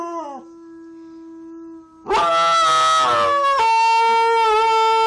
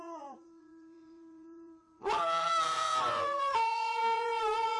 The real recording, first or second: first